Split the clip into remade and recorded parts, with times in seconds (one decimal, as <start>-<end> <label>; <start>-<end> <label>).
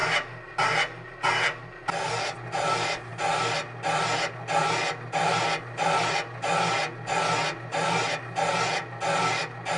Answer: 0.0-9.8 recorded